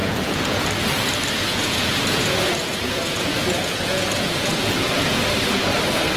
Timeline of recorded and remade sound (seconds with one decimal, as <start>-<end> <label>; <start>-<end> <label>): 0.0-0.7 remade; 0.7-1.5 recorded; 1.5-5.2 remade; 5.2-6.2 recorded